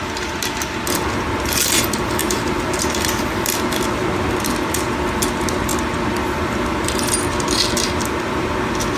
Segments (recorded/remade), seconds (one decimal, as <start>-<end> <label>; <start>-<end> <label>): 0.0-9.0 recorded

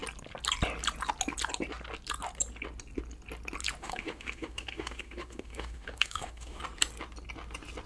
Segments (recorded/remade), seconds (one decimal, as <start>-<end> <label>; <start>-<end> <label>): 0.0-3.8 recorded; 3.8-6.6 remade; 6.6-7.9 recorded

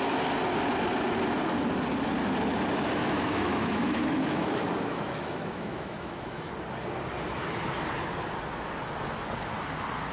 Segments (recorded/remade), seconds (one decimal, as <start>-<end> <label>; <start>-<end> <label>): 0.0-3.0 recorded; 3.0-6.5 remade; 6.5-10.1 recorded

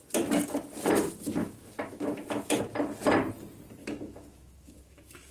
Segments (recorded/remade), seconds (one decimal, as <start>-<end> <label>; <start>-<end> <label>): 0.0-1.4 recorded; 1.4-2.6 remade; 2.6-3.8 recorded; 3.8-5.3 remade